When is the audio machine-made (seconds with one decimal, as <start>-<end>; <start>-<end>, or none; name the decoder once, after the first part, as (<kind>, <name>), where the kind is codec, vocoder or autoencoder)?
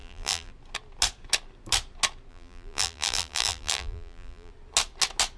0.0-0.5 (vocoder, BigVGAN v2); 2.3-4.5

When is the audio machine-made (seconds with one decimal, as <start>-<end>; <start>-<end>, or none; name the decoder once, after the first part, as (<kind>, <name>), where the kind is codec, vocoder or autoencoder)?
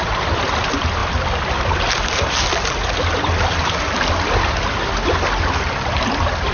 none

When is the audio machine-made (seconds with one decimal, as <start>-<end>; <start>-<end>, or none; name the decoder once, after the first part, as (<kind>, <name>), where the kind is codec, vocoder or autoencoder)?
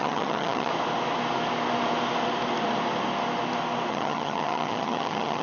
0.0-0.7 (vocoder, HiFi-GAN); 3.9-5.4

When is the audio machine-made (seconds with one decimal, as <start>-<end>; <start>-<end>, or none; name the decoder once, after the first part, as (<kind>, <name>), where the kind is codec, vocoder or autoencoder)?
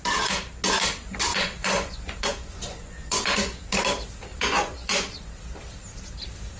1.3-3.6 (vocoder, Vocos); 4.3-5.3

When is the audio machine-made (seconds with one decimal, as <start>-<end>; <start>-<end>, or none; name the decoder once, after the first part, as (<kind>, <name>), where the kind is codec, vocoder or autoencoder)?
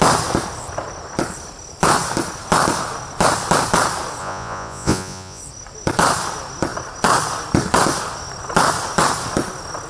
4.2-5.4 (vocoder, Vocos)